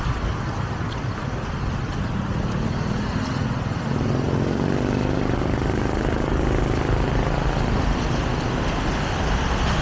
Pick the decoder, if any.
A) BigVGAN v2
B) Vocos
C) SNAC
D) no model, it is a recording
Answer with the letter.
D